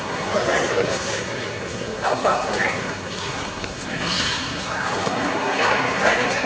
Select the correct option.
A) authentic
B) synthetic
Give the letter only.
B